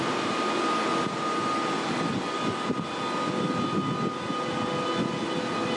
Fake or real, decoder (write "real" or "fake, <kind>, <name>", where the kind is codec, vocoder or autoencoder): real